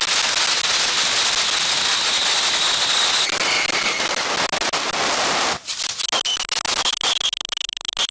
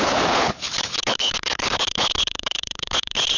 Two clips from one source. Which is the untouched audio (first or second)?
first